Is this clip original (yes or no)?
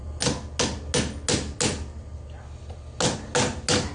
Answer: yes